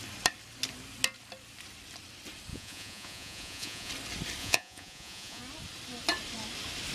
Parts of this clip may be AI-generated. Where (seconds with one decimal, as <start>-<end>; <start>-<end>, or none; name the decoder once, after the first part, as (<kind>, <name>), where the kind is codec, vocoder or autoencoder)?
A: 2.5-3.9 (vocoder, Vocos); 4.4-5.4